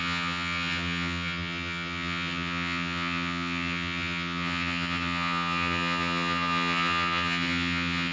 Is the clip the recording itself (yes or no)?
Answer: no